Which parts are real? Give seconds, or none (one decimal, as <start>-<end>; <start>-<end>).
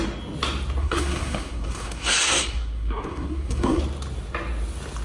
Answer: 0.0-0.8; 3.8-5.0